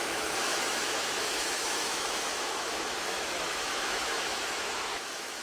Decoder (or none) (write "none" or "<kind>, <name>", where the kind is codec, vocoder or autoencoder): autoencoder, DAC-VAE